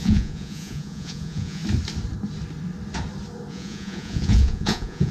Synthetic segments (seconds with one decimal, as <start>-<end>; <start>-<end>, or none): 0.0-1.6; 3.5-5.1